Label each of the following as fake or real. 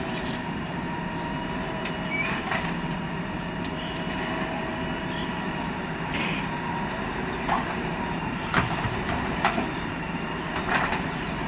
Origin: fake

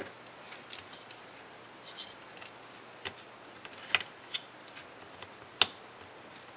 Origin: real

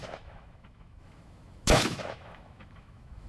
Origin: fake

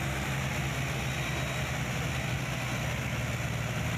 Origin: real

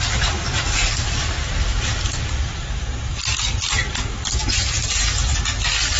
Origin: real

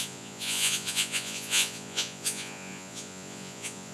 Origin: fake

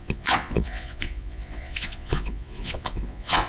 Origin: fake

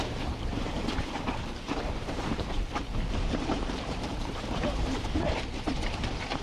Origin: fake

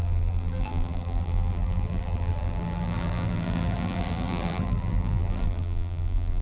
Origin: fake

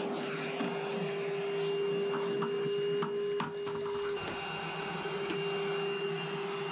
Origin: real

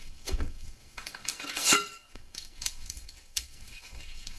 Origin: fake